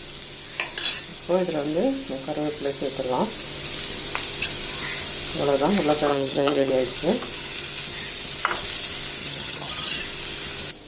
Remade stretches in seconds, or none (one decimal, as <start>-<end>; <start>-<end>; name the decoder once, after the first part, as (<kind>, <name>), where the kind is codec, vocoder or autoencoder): 6.1-6.7 (vocoder, HiFi-GAN); 9.2-10.0